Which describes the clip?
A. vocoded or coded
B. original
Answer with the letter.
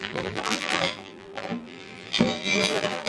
A